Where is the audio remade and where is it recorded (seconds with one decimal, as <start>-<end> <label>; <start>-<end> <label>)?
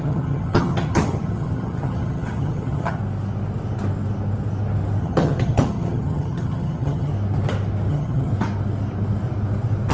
0.0-3.0 remade; 3.0-5.0 recorded; 5.0-7.1 remade; 7.1-7.9 recorded; 7.9-8.3 remade; 8.3-9.9 recorded